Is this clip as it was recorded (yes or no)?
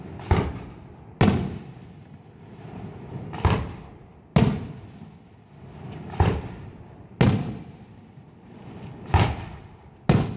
yes